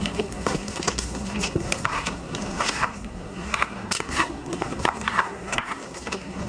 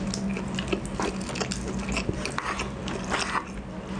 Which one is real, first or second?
second